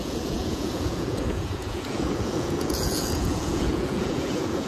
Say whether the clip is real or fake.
fake